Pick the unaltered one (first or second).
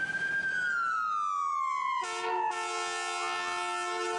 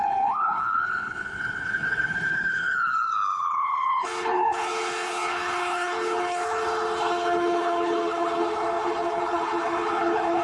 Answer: first